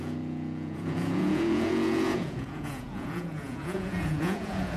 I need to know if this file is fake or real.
fake